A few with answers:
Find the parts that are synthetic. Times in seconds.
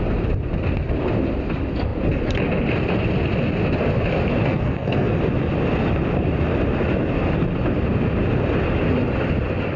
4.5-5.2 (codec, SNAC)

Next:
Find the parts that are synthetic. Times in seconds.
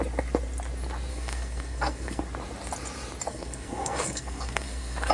1.1-2.2 (codec, SNAC); 3.3-5.1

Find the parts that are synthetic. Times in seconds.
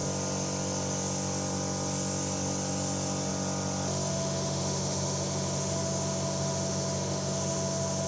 4.1-8.1 (autoencoder, DAC-VAE)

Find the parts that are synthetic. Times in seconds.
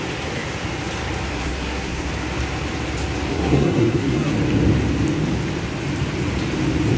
1.3-2.1 (codec, SNAC); 3.3-4.3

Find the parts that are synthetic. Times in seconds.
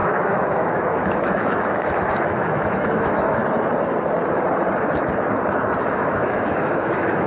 0.0-3.4 (autoencoder, DAC-VAE); 5.9-7.3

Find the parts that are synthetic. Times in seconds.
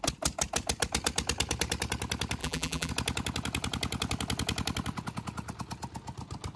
2.4-2.9 (vocoder, BigVGAN v2)